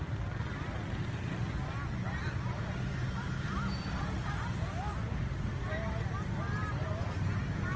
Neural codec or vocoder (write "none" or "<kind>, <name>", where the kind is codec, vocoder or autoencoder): none